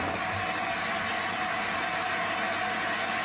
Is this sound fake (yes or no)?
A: no